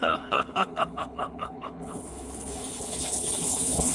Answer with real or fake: fake